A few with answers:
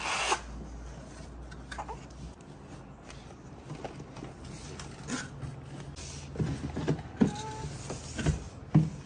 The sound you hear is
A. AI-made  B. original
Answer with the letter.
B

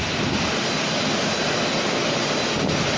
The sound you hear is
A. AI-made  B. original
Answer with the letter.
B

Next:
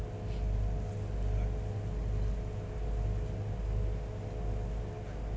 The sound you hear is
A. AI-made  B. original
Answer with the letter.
B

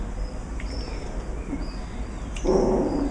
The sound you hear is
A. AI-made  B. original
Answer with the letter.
B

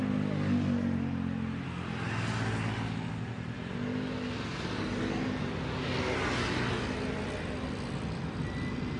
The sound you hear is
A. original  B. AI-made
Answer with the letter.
A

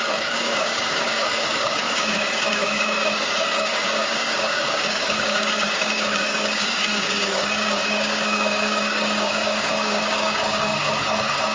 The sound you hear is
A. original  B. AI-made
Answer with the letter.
B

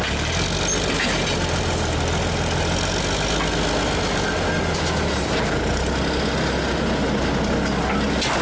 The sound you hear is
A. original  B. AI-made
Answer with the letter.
A